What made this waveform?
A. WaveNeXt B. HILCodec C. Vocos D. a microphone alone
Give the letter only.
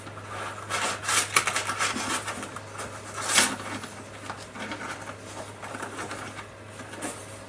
D